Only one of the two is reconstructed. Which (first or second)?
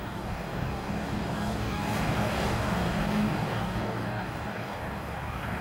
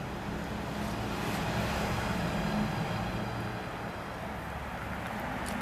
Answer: first